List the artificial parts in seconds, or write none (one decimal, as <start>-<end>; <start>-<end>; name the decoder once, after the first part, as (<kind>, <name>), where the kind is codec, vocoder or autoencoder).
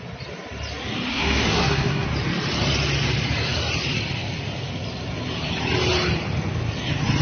1.1-2.1 (codec, SNAC)